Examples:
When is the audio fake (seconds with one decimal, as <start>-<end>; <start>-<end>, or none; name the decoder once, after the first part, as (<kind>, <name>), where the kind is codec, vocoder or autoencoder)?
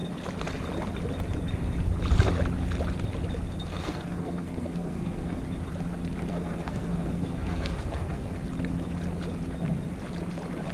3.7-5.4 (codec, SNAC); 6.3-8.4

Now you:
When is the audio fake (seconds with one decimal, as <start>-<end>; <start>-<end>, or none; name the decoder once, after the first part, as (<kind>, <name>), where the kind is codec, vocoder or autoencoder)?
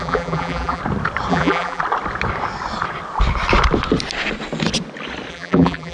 0.0-0.8 (vocoder, BigVGAN v2); 1.3-1.8; 5.3-5.9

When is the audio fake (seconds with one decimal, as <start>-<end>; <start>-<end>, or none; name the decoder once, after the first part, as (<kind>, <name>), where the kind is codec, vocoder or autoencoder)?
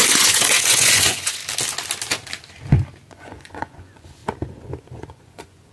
0.0-1.4 (vocoder, Vocos); 3.1-4.2; 4.8-5.7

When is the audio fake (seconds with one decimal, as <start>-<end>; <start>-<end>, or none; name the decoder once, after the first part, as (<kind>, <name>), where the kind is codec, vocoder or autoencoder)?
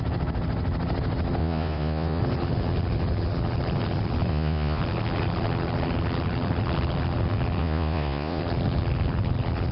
1.4-2.2 (vocoder, Vocos); 4.3-4.8; 7.6-8.4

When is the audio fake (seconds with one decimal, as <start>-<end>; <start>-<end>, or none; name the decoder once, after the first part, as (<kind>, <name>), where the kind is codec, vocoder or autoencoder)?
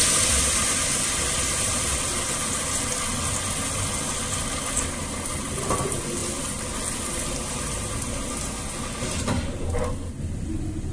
none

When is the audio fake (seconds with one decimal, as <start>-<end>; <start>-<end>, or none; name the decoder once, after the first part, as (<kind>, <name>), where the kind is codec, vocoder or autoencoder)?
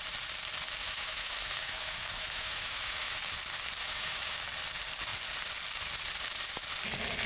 0.8-3.2 (autoencoder, DAC-VAE); 3.8-4.4